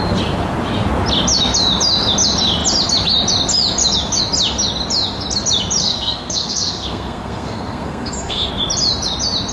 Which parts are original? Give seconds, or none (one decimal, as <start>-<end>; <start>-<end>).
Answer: 0.0-5.8; 8.5-9.5